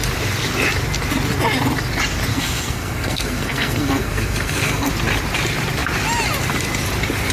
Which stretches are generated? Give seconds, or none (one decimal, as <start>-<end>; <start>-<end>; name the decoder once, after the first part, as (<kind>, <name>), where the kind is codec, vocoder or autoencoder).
2.3-4.9 (codec, SNAC)

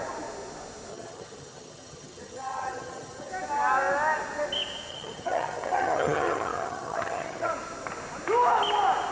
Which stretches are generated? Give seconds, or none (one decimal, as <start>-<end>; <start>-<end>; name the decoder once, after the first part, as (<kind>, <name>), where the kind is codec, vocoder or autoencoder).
0.9-3.3 (vocoder, HiFi-GAN); 4.9-7.5

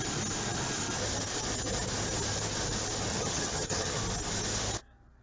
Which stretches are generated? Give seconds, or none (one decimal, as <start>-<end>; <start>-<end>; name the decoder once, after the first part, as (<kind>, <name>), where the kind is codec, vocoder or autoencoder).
3.1-4.0 (vocoder, HiFi-GAN)

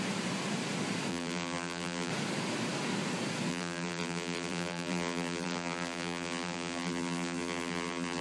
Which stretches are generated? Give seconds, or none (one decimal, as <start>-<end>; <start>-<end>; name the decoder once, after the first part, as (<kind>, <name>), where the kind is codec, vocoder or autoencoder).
1.1-2.1 (vocoder, BigVGAN v2); 3.5-8.2

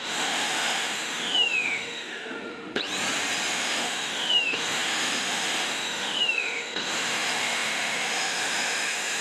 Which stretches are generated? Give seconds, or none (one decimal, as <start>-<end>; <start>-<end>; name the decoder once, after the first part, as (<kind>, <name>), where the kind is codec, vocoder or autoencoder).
0.0-2.8 (autoencoder, DAC-VAE); 3.5-9.2